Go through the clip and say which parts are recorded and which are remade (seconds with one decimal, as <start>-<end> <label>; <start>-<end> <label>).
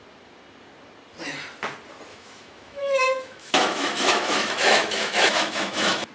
0.0-2.1 recorded; 2.1-6.1 remade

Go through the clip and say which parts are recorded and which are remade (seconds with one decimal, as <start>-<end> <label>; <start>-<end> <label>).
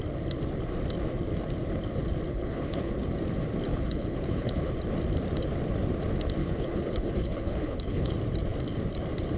0.0-2.3 recorded; 2.3-2.9 remade; 2.9-3.7 recorded; 3.7-4.7 remade; 4.7-6.4 recorded; 6.4-8.1 remade; 8.1-9.4 recorded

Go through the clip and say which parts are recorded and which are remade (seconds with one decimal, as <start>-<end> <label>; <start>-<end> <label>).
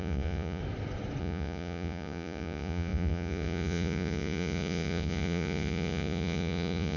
0.0-0.6 remade; 0.6-1.2 recorded; 1.2-7.0 remade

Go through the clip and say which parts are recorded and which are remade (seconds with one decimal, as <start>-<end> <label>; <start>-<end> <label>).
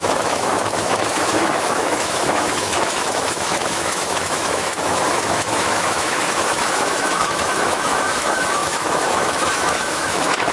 0.0-10.5 remade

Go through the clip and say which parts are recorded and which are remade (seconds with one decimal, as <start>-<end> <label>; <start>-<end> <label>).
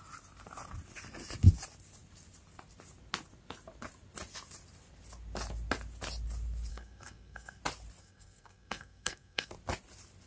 0.0-6.7 recorded; 6.7-7.6 remade; 7.6-8.0 recorded; 8.0-9.5 remade; 9.5-10.3 recorded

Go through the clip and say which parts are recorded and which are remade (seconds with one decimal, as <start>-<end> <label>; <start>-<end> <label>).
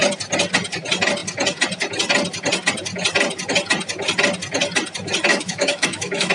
0.0-5.3 recorded; 5.3-6.3 remade